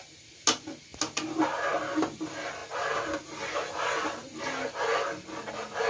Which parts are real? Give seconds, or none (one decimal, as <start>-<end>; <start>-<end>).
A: 0.0-5.9